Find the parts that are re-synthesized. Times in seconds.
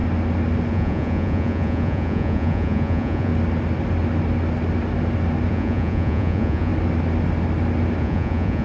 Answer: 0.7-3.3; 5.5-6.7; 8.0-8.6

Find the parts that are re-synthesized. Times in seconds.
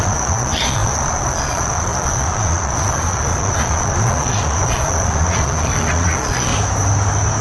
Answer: 0.0-6.5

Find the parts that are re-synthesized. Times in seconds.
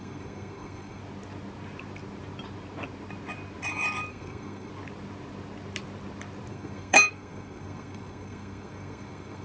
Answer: 0.0-1.0; 4.1-4.7; 6.5-9.4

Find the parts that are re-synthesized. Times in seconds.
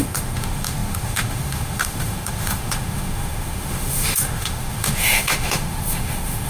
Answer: 0.0-6.5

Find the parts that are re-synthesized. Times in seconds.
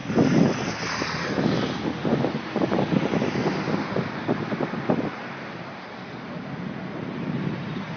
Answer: none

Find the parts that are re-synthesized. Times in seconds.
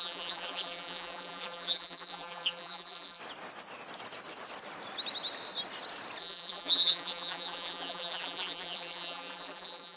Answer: 0.0-3.2; 6.2-10.0